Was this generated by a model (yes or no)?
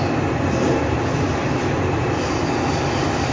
no